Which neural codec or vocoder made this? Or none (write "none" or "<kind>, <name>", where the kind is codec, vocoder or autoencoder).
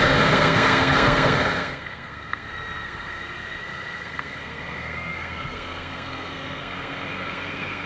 codec, SNAC